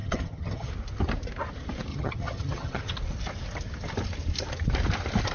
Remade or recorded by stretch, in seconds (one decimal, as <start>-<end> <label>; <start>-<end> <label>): 0.0-0.7 remade; 0.7-1.9 recorded; 1.9-3.0 remade; 3.0-5.3 recorded